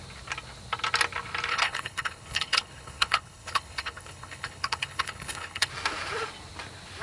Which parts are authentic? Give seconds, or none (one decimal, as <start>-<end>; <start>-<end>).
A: 0.0-1.5; 5.7-7.0